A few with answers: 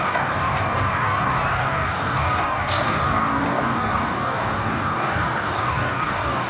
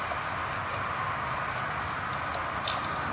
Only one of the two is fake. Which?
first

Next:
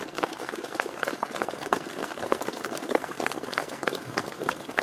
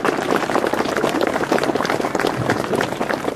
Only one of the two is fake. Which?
first